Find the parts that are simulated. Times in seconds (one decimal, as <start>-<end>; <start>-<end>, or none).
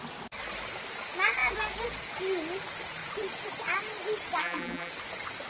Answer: 4.4-4.9